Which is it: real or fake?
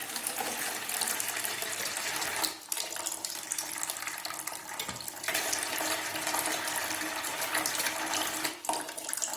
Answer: real